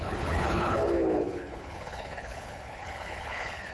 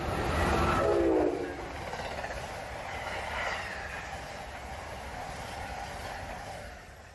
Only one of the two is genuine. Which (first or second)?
second